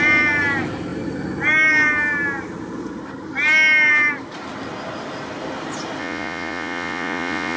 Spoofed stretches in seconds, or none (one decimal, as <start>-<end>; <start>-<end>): 6.0-7.6